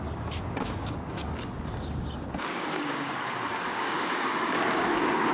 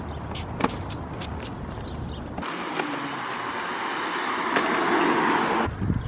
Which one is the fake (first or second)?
first